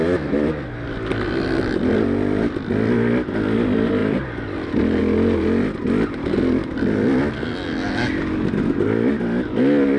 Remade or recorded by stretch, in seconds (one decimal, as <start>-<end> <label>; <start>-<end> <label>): 0.0-4.0 recorded; 4.0-5.0 remade; 5.0-10.0 recorded